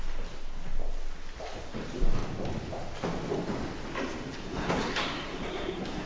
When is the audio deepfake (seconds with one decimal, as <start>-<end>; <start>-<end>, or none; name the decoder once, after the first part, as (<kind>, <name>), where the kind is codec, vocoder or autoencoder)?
4.4-6.1 (codec, SNAC)

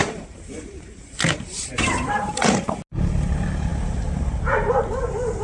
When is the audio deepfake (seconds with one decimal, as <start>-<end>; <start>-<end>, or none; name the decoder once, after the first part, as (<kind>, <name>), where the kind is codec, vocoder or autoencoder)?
0.0-2.3 (vocoder, BigVGAN v2)

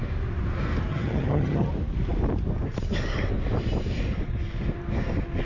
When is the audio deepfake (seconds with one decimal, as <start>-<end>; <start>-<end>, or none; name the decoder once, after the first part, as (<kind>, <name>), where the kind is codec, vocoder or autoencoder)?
0.9-1.7 (vocoder, HiFi-GAN)